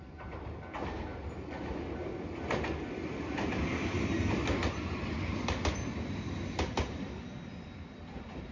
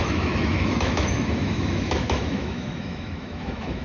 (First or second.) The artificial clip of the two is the second